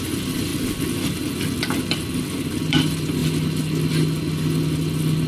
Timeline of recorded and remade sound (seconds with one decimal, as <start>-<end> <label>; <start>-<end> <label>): 0.0-0.5 remade; 0.5-2.6 recorded; 2.6-5.3 remade